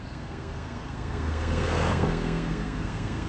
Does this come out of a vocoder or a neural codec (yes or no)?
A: yes